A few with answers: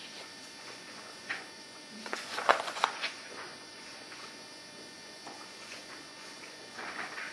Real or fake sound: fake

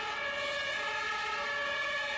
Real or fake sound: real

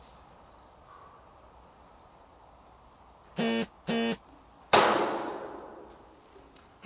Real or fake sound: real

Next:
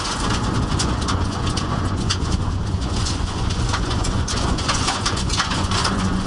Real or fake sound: fake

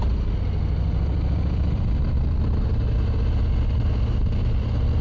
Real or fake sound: real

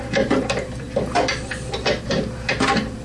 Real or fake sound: real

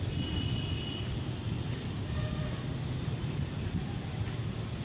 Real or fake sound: real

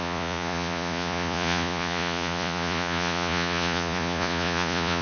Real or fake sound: fake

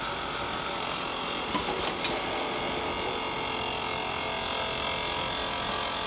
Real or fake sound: real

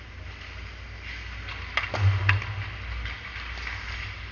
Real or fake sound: real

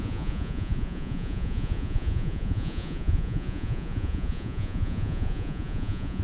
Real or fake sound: fake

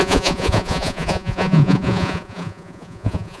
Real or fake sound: fake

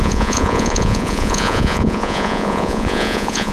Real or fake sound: fake